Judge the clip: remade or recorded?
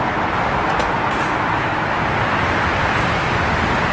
recorded